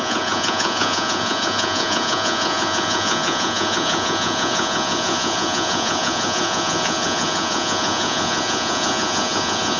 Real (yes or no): no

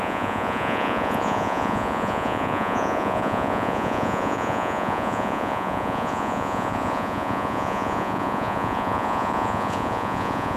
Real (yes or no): no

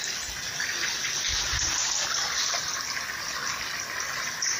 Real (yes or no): yes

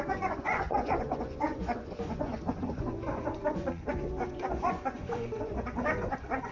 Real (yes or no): no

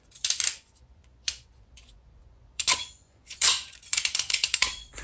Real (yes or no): no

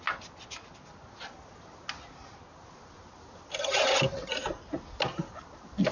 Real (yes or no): yes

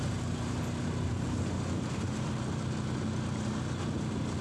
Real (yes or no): yes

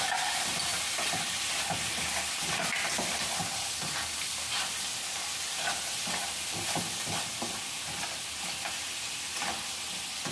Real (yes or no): yes